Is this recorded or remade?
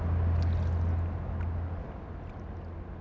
recorded